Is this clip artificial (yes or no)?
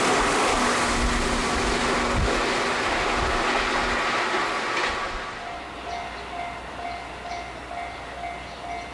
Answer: no